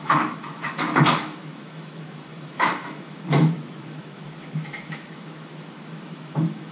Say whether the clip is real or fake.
fake